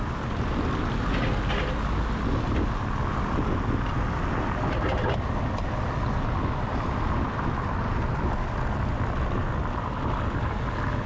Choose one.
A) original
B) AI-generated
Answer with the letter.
A